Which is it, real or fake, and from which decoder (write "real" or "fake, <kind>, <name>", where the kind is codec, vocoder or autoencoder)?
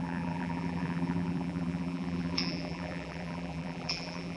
fake, vocoder, BigVGAN v2